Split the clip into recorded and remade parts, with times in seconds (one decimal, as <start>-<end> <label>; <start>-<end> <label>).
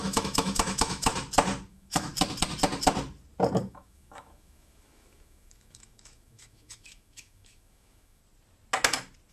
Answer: 0.0-1.1 remade; 1.1-1.7 recorded; 1.7-2.1 remade; 2.1-3.6 recorded; 3.6-8.2 remade; 8.2-9.3 recorded